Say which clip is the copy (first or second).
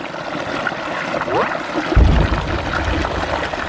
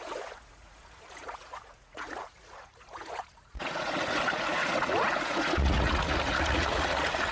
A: second